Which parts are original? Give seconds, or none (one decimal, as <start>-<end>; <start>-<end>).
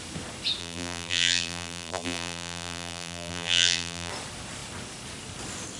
0.0-0.6; 4.1-5.8